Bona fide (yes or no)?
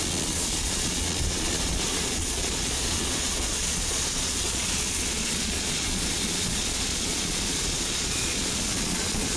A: no